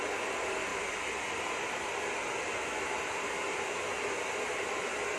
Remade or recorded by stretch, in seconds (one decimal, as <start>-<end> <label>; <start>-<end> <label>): 0.0-5.2 recorded